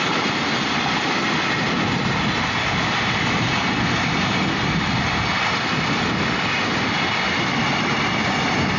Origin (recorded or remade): recorded